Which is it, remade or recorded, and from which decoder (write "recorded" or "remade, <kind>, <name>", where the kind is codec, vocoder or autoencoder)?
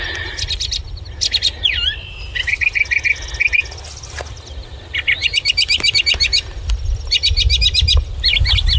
recorded